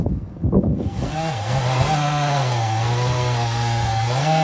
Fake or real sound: fake